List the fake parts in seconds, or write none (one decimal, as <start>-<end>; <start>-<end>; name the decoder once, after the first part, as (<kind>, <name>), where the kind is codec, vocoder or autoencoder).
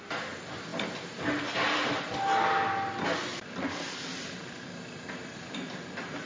none